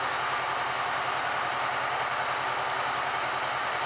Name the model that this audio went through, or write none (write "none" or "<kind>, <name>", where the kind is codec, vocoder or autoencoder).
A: none